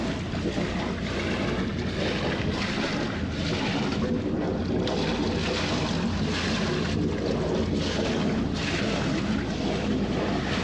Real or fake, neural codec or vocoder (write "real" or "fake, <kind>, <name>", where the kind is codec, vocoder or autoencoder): real